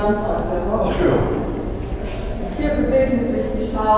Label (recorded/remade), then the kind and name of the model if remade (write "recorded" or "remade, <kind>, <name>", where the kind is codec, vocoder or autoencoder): recorded